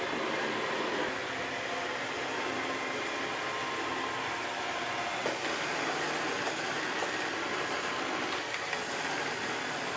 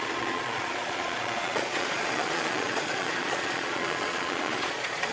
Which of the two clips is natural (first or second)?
first